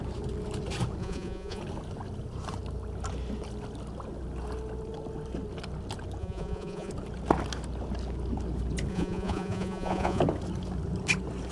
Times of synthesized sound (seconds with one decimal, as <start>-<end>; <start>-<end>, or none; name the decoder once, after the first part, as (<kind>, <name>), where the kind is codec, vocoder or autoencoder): 1.0-1.6 (vocoder, Vocos); 6.2-6.9; 8.9-10.2